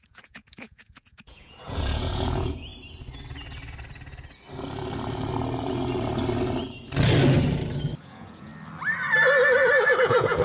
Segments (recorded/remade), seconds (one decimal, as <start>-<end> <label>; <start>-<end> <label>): 0.0-2.7 remade; 2.7-8.0 recorded; 8.0-8.5 remade; 8.5-10.0 recorded; 10.0-10.4 remade